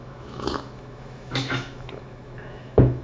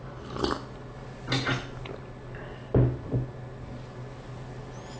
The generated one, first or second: first